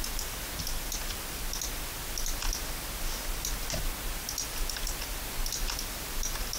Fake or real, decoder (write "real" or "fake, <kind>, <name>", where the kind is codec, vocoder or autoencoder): real